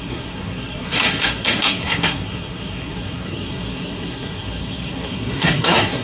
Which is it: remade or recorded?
remade